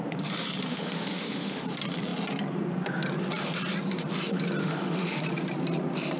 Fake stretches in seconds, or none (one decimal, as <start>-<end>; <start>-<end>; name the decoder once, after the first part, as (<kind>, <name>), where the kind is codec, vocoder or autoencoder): 0.7-1.6 (autoencoder, DAC-VAE); 4.6-5.2